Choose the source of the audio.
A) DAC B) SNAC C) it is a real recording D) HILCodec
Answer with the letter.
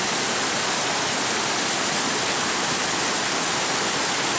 C